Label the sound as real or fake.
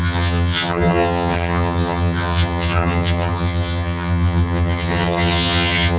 fake